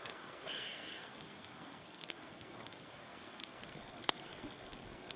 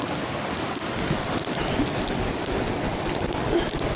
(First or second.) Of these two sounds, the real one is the second